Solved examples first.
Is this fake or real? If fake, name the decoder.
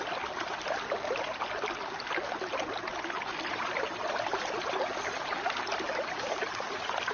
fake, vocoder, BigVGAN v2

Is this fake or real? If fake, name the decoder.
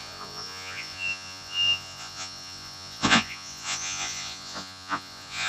fake, vocoder, Vocos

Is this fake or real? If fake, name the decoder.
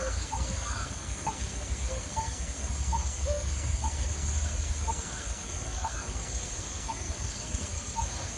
fake, codec, SNAC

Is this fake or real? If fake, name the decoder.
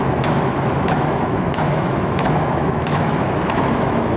fake, autoencoder, DAC-VAE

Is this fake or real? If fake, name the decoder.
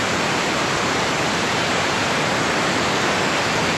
fake, vocoder, BigVGAN v2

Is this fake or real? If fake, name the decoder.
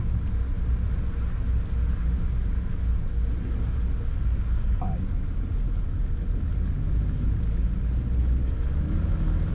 real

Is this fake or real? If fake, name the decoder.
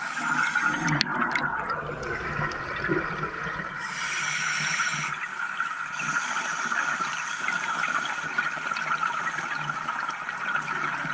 real